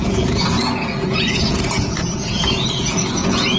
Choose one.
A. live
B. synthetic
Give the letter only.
B